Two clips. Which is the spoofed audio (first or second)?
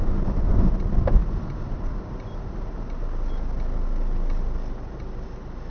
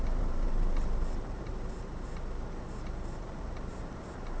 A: second